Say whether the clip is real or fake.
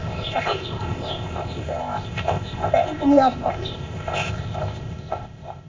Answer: fake